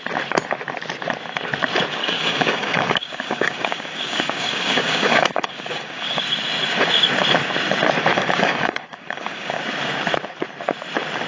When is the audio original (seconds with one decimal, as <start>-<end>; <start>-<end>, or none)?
0.0-2.0; 6.2-8.1; 9.6-11.3

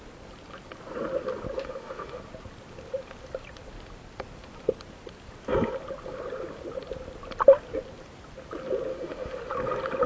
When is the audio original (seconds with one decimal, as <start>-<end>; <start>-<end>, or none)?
0.0-1.6; 2.2-8.9; 9.4-10.1

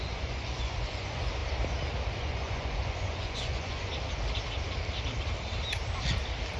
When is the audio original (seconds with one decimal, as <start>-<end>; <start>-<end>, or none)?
1.4-2.2; 3.9-6.6

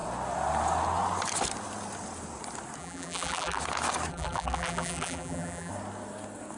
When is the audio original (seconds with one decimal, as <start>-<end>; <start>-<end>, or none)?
0.0-2.8; 3.6-4.1; 5.7-6.6

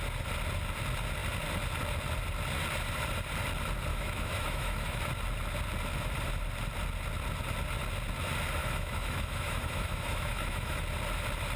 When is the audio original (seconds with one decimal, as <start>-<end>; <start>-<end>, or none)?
0.0-3.9; 5.0-8.6; 10.8-11.6

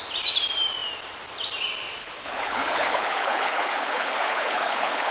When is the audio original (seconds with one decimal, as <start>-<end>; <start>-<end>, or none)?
0.0-2.0

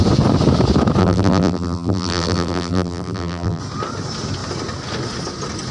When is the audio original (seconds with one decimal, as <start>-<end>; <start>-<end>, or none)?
0.0-1.0; 3.6-5.7

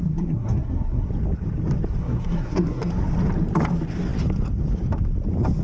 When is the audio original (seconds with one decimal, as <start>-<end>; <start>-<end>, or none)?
1.1-2.0; 2.9-5.6